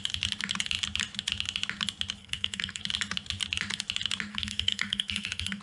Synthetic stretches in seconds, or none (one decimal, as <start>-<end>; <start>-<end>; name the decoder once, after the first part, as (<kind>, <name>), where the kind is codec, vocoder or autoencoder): 2.2-2.8 (codec, SNAC); 4.3-5.6